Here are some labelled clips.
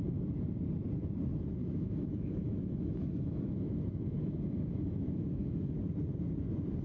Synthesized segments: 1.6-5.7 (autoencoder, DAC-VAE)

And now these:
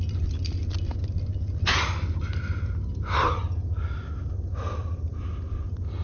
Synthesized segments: none

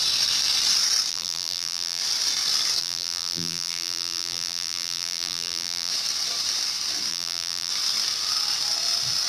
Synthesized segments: 1.1-2.0 (vocoder, BigVGAN v2); 2.8-5.9; 7.1-7.7

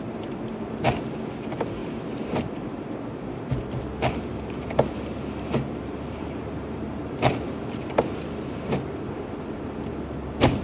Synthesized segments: 1.8-3.6 (vocoder, BigVGAN v2); 4.3-7.0

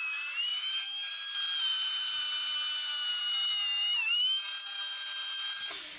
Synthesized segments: none

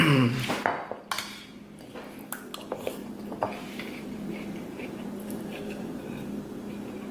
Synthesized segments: 3.0-6.3 (vocoder, BigVGAN v2)